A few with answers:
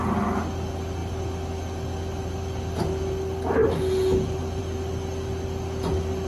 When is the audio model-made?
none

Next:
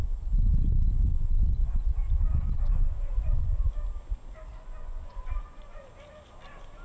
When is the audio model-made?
1.1-3.7 (vocoder, Vocos); 4.5-5.8